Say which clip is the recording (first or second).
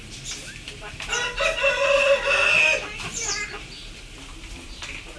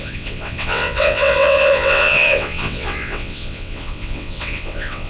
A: first